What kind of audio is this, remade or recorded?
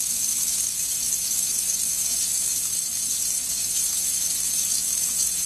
remade